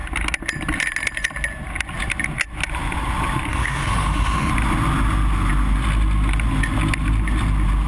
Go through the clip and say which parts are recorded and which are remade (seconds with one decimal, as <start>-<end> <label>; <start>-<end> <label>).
0.0-3.5 recorded; 3.5-4.5 remade; 4.5-7.9 recorded